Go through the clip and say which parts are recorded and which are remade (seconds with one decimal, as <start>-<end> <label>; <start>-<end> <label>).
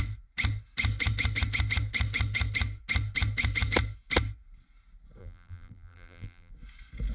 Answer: 0.0-5.2 recorded; 5.2-6.5 remade; 6.5-7.1 recorded